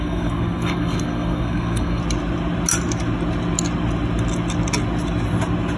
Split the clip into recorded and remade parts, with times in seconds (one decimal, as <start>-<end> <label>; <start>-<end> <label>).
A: 0.0-2.0 remade; 2.0-5.8 recorded